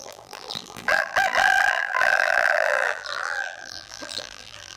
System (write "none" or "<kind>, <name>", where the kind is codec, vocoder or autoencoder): vocoder, BigVGAN v2